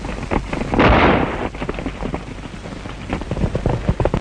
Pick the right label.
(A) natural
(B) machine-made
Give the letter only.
A